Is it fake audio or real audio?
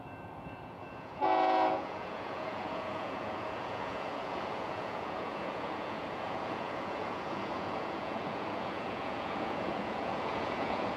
fake